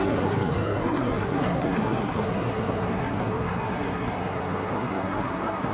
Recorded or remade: remade